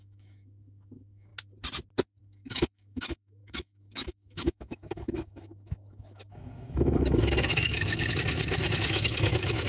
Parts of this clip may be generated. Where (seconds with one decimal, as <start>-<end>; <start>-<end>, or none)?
0.0-1.3; 2.2-9.7